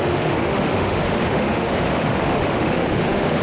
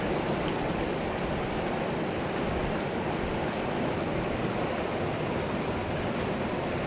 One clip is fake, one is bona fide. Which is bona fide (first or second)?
second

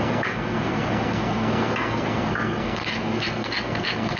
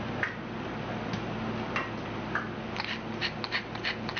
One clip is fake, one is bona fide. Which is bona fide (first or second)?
second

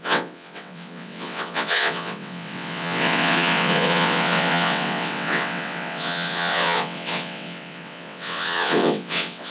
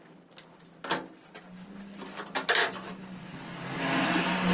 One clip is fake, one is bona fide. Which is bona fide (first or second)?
second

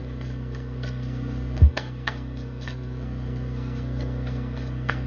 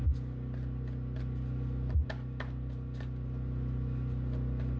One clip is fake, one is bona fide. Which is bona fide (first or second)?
second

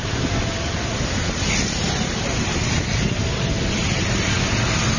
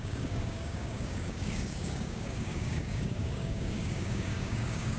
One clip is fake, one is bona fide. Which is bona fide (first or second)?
first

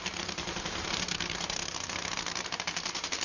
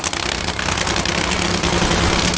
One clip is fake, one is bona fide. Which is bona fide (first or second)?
second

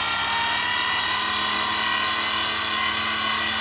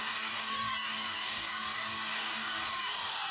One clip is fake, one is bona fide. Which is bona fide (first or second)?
first